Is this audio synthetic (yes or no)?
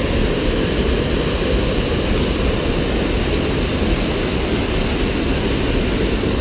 no